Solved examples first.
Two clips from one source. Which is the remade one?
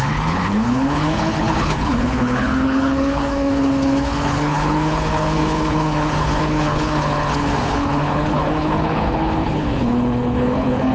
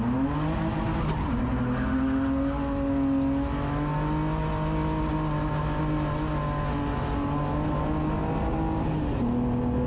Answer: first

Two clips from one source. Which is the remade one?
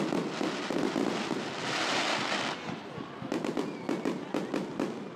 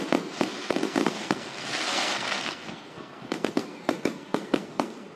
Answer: second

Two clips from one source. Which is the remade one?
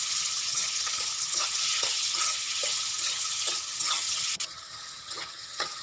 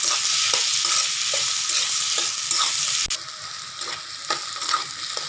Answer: first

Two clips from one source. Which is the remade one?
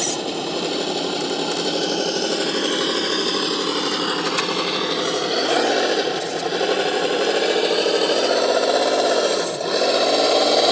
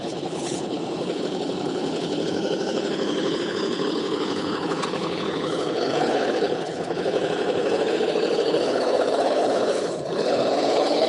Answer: second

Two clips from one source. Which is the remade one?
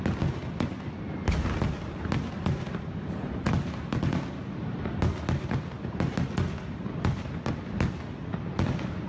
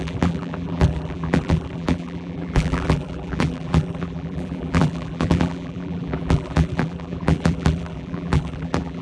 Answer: second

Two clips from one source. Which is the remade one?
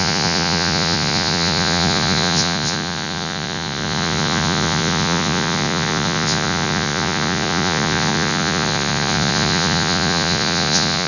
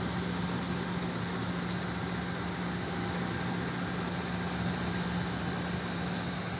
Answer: first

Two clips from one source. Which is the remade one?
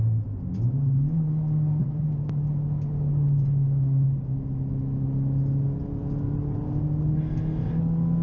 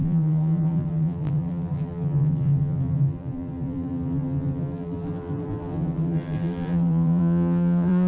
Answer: second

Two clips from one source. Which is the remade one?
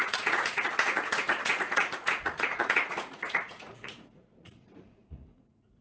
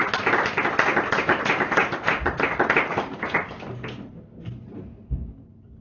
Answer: first